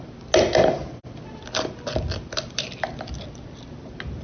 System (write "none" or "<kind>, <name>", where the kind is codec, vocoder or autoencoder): none